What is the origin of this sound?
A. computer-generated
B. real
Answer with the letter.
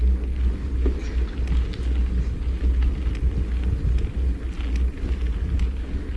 B